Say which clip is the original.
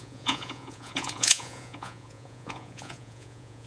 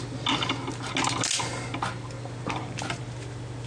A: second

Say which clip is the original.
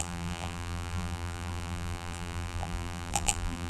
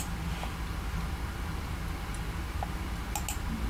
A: second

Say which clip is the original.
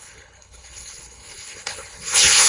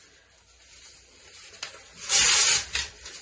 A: second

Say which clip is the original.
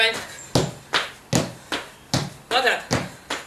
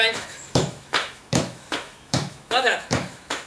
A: first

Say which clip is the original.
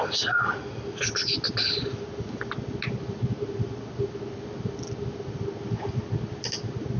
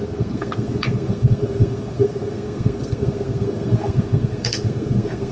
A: first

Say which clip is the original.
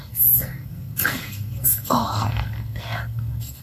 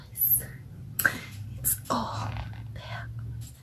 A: second